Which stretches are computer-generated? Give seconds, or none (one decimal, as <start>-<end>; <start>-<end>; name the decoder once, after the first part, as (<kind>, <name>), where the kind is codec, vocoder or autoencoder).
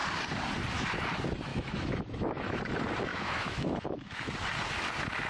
1.5-2.6 (autoencoder, DAC-VAE); 3.1-4.3